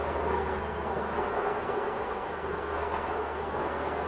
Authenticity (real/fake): fake